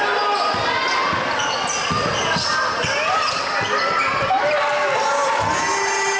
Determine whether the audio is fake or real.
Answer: real